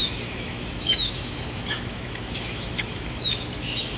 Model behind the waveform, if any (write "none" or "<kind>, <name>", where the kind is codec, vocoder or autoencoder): autoencoder, DAC-VAE